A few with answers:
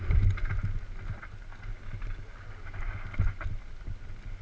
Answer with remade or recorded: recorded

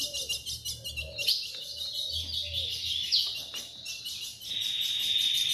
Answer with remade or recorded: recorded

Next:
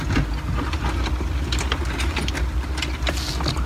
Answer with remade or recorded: recorded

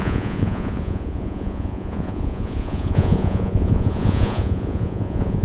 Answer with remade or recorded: remade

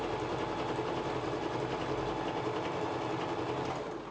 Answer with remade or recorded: recorded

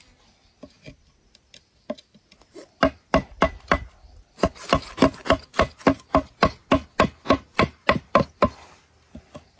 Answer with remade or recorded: recorded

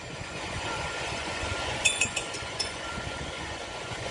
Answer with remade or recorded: remade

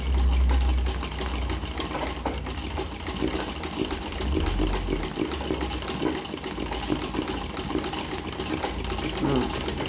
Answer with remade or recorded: recorded